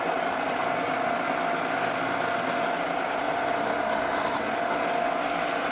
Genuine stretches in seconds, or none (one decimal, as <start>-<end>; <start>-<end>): 0.0-5.7